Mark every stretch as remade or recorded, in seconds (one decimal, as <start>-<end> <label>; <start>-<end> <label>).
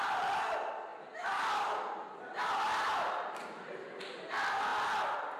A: 0.0-5.4 recorded